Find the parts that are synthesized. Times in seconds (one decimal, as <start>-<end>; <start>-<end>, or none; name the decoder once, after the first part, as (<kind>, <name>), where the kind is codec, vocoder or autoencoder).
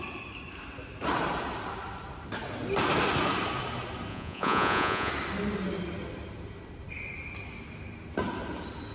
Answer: 4.1-5.1 (vocoder, Vocos)